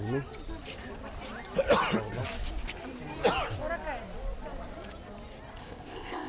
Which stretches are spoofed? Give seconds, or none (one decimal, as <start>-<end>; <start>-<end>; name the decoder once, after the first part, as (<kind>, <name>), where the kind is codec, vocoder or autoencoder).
5.6-6.3 (codec, ZipCodec)

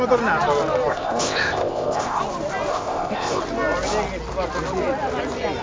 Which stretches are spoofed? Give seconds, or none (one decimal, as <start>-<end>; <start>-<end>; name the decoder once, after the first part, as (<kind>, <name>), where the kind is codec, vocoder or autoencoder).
0.9-2.2 (codec, ZipCodec); 2.7-3.4

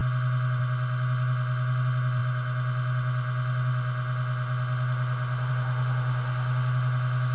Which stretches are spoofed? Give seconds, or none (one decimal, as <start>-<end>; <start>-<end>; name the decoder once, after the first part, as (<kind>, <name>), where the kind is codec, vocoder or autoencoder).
none

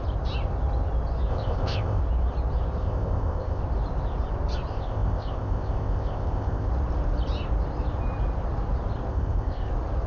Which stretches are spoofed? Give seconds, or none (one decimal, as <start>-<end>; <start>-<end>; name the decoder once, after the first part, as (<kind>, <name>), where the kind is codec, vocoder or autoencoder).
1.3-2.0 (codec, ZipCodec); 2.8-3.6; 4.7-6.7; 9.1-9.7